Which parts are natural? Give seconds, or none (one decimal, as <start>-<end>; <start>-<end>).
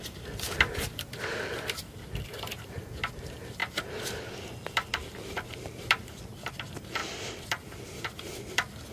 0.0-8.9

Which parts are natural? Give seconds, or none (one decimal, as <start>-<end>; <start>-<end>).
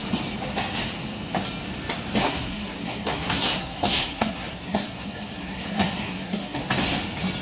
0.0-2.2; 6.6-7.4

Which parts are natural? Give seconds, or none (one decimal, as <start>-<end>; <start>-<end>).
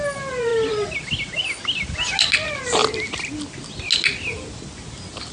0.0-5.3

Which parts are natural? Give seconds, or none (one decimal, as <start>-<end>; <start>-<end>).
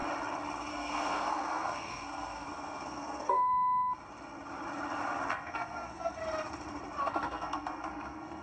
0.0-0.7; 3.5-5.3; 6.2-7.0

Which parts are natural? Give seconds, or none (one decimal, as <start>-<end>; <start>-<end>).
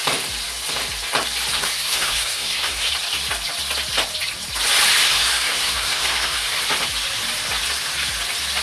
0.0-1.5; 2.9-5.0; 6.6-8.6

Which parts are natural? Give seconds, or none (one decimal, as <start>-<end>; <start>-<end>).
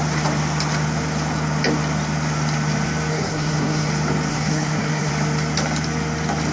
0.0-3.1; 3.9-4.3; 5.1-6.5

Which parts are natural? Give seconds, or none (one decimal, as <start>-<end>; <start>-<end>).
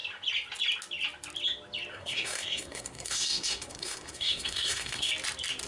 0.0-1.9; 5.1-5.7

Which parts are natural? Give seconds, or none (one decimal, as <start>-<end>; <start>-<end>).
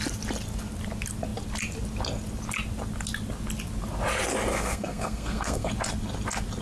0.0-4.5; 5.7-6.6